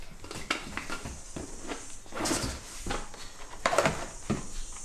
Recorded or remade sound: recorded